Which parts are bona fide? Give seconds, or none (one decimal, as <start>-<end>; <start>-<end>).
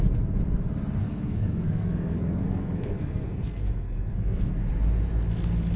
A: 0.0-1.0; 4.5-5.8